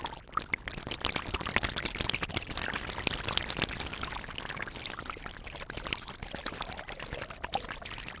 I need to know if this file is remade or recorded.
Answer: recorded